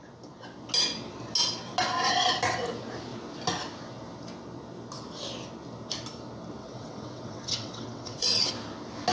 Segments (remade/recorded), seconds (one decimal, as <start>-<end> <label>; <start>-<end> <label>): 0.0-6.6 recorded; 6.6-8.5 remade; 8.5-9.1 recorded